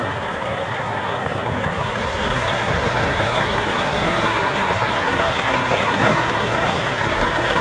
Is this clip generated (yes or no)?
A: yes